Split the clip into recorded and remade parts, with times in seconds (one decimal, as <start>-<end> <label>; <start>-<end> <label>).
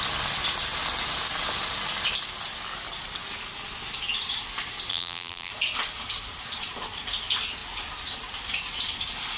0.0-4.9 recorded; 4.9-5.5 remade; 5.5-9.4 recorded